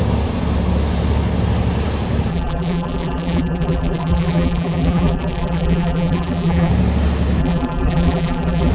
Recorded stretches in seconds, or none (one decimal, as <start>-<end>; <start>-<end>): 0.0-2.3; 6.7-7.4

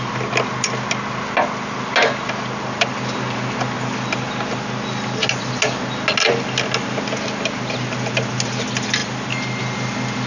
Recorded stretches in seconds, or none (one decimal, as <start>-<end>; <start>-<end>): 0.0-10.3

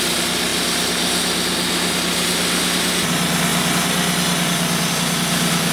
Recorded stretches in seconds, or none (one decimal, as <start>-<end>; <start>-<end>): 0.0-5.7